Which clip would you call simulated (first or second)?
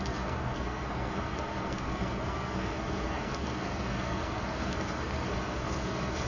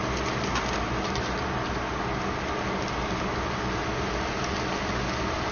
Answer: first